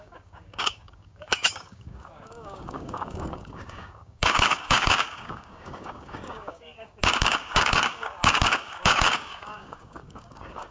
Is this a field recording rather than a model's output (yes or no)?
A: no